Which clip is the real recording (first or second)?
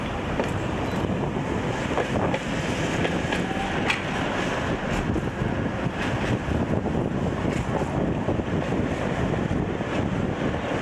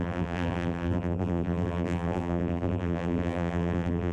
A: first